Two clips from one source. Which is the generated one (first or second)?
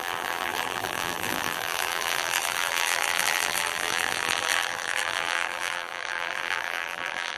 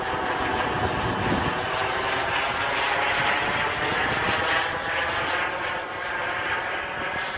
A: first